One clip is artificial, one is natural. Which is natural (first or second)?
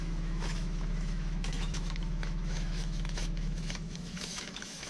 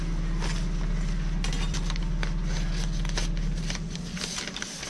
second